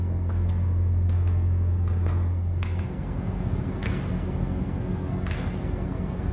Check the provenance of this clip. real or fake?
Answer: fake